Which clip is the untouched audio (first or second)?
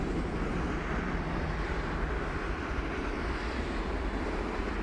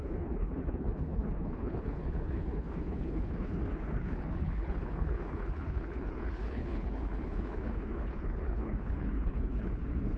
first